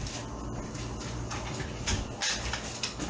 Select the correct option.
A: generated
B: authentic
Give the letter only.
B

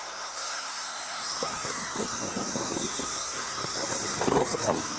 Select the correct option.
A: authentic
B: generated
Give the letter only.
B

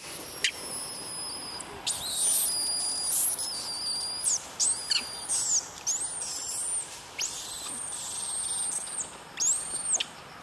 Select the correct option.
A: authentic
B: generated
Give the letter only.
A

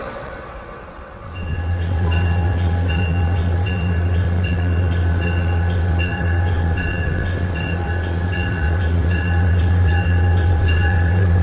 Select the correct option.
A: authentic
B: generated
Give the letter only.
B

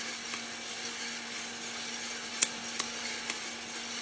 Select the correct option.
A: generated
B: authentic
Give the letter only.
B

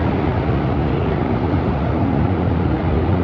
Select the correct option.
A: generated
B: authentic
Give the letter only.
A